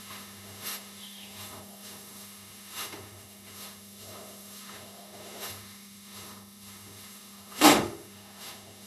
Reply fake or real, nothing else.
fake